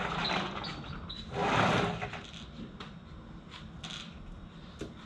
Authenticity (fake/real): real